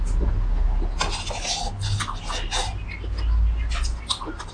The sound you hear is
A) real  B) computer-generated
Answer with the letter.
A